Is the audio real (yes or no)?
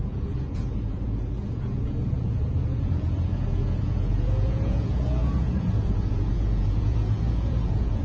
no